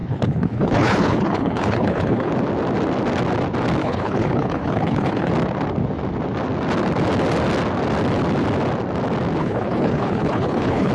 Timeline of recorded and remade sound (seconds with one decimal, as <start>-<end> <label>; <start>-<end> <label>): 0.0-2.3 remade; 2.3-3.8 recorded; 3.8-5.3 remade; 5.3-9.4 recorded; 9.4-10.9 remade